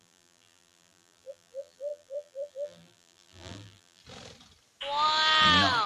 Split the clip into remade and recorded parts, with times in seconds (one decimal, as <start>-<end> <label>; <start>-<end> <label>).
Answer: 0.0-4.0 remade; 4.0-5.9 recorded